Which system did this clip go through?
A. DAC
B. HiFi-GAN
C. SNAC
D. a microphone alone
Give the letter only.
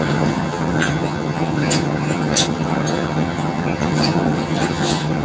B